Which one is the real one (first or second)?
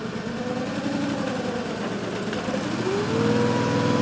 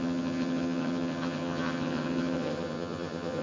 first